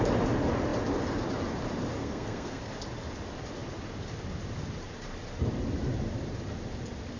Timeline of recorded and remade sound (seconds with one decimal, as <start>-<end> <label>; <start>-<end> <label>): 0.0-2.0 recorded; 2.0-2.7 remade; 2.7-7.2 recorded